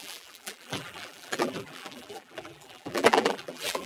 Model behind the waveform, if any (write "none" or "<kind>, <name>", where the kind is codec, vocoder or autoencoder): vocoder, BigVGAN v2